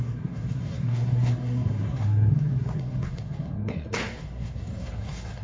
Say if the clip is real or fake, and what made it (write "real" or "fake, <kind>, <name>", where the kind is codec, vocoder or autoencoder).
fake, codec, SNAC